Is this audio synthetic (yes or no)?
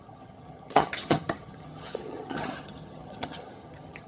yes